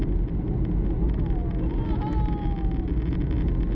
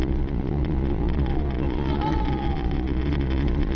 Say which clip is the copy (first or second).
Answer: second